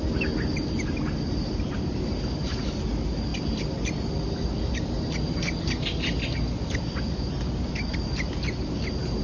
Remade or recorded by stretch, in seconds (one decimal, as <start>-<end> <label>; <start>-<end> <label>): 0.0-9.2 recorded